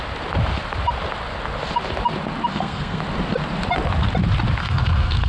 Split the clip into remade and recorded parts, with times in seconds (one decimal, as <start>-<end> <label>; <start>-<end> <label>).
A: 0.0-2.5 recorded; 2.5-3.0 remade; 3.0-4.6 recorded; 4.6-5.3 remade